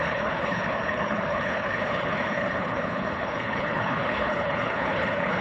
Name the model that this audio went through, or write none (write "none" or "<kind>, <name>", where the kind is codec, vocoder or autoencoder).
codec, HILCodec